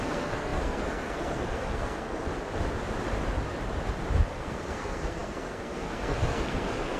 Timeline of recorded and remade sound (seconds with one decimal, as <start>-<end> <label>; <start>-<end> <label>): 0.0-2.3 remade; 2.3-4.2 recorded; 4.2-7.0 remade